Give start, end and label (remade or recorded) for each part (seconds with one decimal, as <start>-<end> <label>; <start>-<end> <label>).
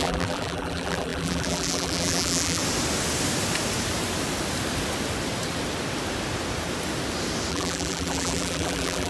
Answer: 0.0-2.6 remade; 2.6-7.5 recorded; 7.5-9.1 remade